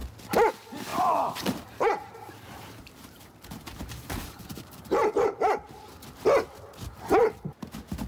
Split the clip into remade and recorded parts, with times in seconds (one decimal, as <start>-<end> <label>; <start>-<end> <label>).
0.0-0.9 recorded; 0.9-5.8 remade; 5.8-8.1 recorded